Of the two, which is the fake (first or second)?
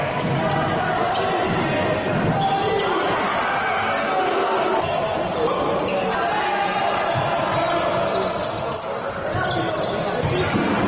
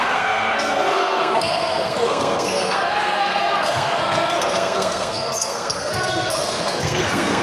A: second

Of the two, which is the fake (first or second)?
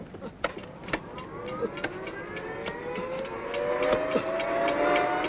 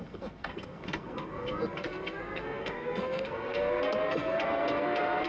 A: second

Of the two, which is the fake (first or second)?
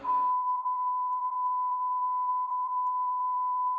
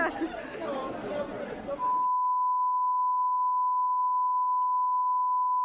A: first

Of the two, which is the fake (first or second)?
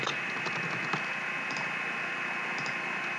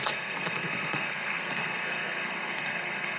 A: second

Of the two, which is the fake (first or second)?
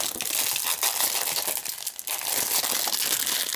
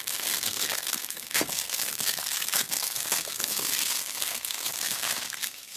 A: second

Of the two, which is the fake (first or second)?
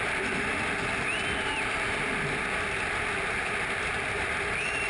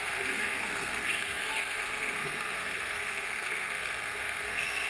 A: second